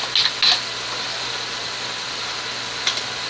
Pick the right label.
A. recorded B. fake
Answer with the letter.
A